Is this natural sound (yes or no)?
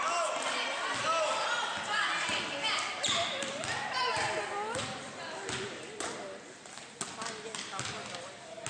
yes